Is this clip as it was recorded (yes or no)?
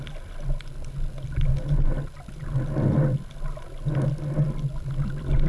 yes